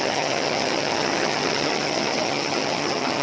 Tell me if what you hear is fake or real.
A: fake